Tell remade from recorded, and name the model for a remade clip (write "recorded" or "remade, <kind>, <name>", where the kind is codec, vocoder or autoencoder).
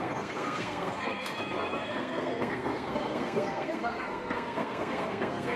remade, codec, SNAC